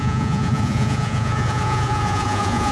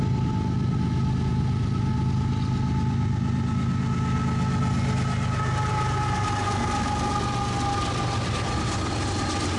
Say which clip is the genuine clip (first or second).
second